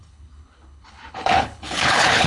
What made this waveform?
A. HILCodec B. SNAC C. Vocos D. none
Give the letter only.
A